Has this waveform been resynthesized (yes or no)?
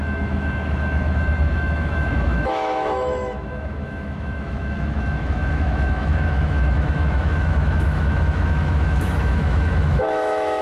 yes